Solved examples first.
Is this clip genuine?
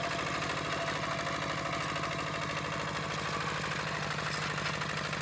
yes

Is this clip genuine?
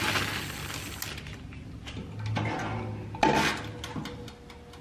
yes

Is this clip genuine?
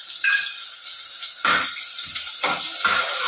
yes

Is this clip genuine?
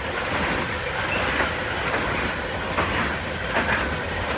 yes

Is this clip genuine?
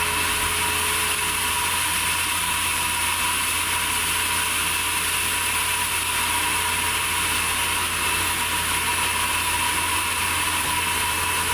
yes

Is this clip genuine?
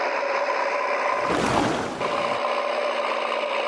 yes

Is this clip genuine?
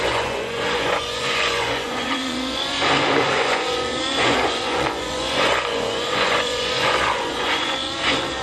no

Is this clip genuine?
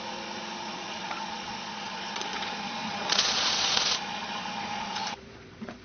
no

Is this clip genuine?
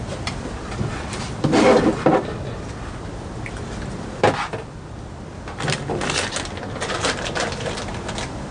yes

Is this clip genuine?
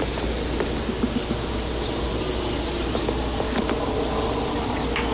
yes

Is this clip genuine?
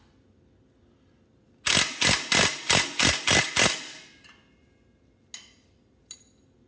yes